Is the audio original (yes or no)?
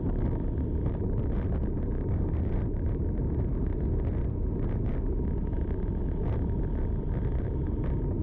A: yes